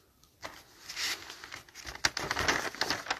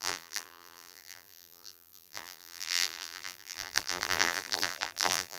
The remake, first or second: second